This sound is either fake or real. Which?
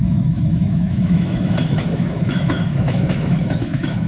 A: fake